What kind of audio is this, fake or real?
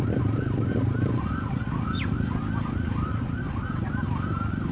real